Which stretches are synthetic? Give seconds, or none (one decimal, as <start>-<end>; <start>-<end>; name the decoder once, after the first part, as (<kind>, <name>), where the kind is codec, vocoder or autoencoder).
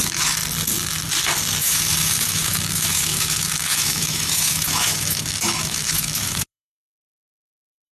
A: 0.0-0.4 (autoencoder, DAC-VAE); 1.6-7.9